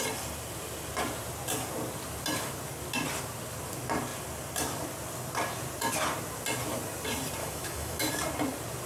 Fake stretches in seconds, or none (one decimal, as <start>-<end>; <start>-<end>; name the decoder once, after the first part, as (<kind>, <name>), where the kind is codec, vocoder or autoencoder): 7.4-8.1 (autoencoder, DAC-VAE)